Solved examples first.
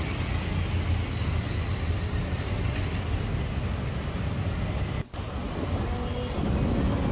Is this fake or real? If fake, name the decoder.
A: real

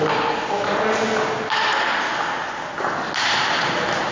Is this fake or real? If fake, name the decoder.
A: real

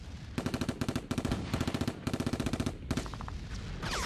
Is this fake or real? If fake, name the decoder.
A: real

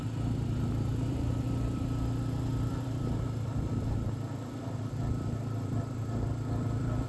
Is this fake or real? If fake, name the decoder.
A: fake, vocoder, BigVGAN v2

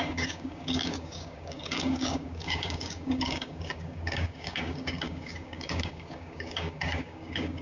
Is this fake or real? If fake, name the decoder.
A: fake, codec, DAC